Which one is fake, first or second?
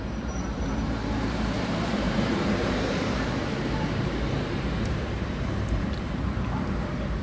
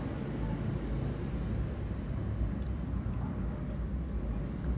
first